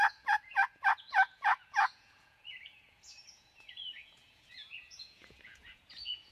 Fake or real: fake